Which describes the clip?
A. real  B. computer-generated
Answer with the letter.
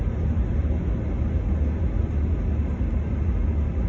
A